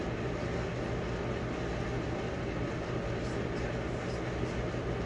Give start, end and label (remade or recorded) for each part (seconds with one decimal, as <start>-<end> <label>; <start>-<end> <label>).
0.0-5.1 recorded